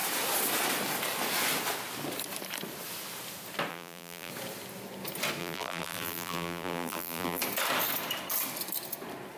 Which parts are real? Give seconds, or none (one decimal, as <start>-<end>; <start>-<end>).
0.0-3.7; 4.3-5.4; 7.4-9.4